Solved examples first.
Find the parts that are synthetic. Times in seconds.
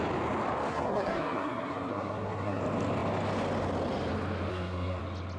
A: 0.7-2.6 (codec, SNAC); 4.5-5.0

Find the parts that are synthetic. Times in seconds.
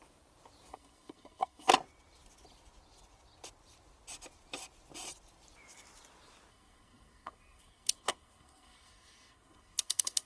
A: 0.7-1.7 (codec, SNAC); 6.5-10.3